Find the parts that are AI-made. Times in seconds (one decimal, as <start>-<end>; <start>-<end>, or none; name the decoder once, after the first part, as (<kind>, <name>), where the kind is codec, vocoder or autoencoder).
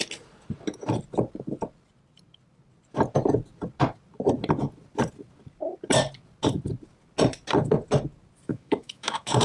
8.5-9.4 (autoencoder, DAC-VAE)